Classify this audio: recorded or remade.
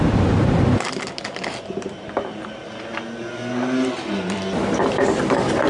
recorded